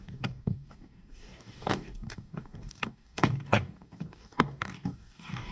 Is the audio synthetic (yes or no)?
yes